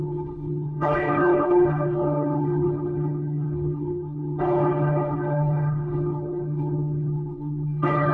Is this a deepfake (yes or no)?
yes